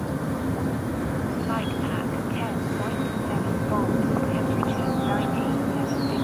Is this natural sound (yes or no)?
yes